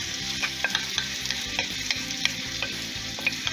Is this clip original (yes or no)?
no